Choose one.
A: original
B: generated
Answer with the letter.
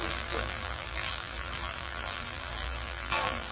B